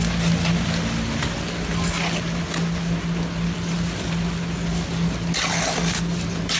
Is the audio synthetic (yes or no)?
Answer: no